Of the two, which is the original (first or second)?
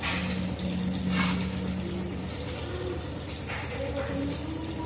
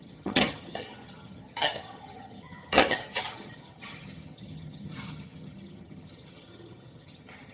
first